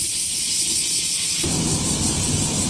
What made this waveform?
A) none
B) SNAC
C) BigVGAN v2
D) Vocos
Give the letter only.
A